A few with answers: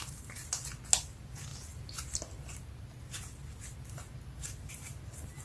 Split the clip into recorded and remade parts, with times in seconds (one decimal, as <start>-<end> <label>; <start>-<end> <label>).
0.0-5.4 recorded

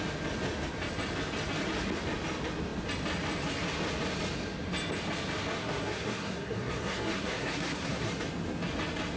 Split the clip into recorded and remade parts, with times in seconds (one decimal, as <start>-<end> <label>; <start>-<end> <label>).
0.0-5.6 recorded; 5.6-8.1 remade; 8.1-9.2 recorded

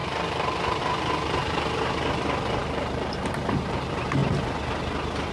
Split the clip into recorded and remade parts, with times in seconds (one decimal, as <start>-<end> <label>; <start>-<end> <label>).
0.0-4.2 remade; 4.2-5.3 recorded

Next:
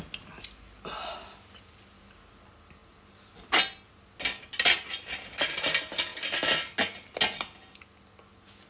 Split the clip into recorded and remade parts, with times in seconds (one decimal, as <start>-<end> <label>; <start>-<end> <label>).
0.0-8.7 recorded

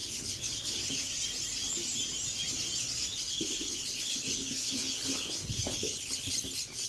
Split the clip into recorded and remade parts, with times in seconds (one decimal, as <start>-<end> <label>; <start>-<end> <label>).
0.0-1.1 remade; 1.1-3.1 recorded; 3.1-6.3 remade; 6.3-6.9 recorded